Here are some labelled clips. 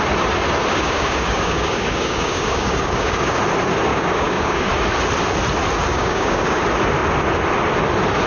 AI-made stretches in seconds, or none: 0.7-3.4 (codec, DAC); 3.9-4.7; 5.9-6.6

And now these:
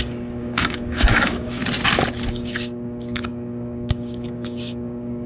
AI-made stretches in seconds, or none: 0.0-1.6 (codec, DAC); 2.3-5.3

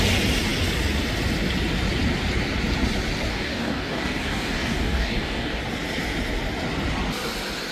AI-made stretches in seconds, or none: 3.3-5.6 (codec, DAC)

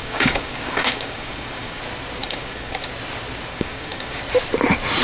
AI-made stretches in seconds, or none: 0.0-1.8 (codec, DAC); 2.2-2.9; 3.5-4.2

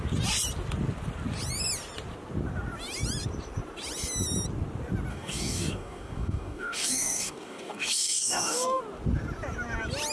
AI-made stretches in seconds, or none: 5.1-8.8 (codec, DAC)

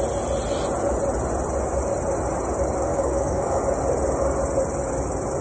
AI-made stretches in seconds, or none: 2.9-3.6 (codec, DAC)

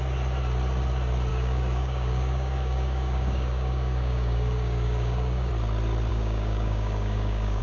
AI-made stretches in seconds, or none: 1.3-5.5 (codec, DAC); 6.1-7.6